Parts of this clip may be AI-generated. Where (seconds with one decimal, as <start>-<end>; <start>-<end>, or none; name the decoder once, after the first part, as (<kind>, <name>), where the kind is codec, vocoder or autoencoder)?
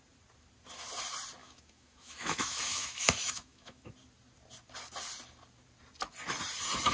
1.4-3.9 (autoencoder, DAC-VAE)